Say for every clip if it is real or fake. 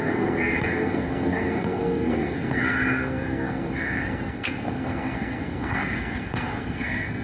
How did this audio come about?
fake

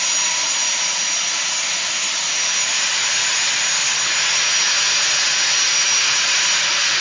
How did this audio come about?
real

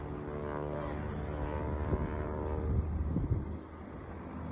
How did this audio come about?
real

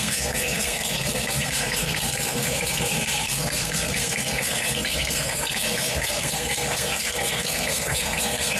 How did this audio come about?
fake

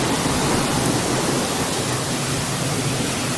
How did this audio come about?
real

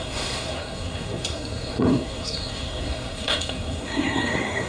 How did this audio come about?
fake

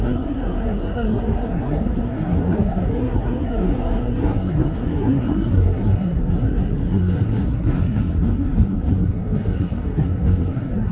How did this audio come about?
fake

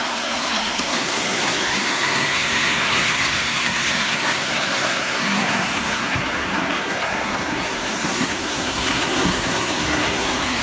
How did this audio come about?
fake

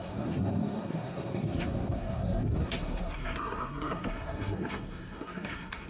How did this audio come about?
fake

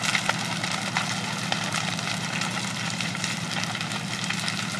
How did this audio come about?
real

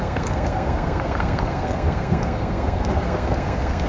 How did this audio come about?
fake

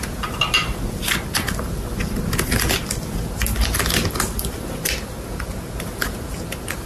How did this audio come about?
real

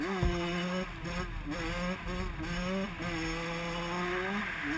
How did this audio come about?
real